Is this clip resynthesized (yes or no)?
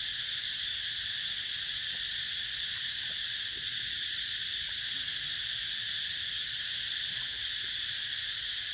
yes